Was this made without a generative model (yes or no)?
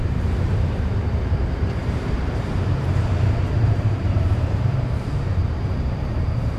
no